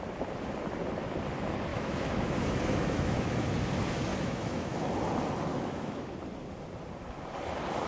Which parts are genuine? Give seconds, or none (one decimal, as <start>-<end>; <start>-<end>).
0.0-1.7; 3.5-4.1; 4.9-5.5; 6.1-7.9